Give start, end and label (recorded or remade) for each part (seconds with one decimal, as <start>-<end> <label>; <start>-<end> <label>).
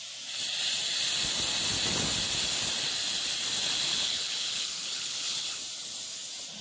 0.0-3.9 recorded; 3.9-5.6 remade; 5.6-6.6 recorded